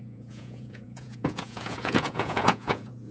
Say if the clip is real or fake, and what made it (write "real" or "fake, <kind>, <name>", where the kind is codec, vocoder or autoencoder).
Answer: fake, vocoder, Vocos